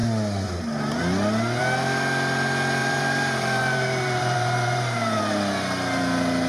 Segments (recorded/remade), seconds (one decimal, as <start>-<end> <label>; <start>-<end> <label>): 0.0-2.8 recorded; 2.8-5.2 remade; 5.2-6.5 recorded